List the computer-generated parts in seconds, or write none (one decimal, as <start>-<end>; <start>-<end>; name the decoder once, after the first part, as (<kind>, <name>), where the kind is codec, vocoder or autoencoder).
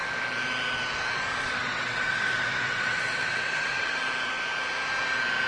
1.4-4.0 (vocoder, WaveNeXt)